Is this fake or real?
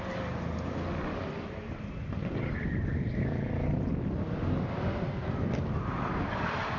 real